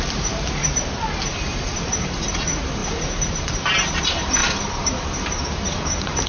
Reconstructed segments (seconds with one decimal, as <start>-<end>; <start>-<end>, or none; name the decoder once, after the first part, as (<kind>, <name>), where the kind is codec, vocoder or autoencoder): 0.0-0.6 (vocoder, BigVGAN v2); 1.2-6.3